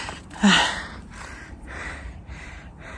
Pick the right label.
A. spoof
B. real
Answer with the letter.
A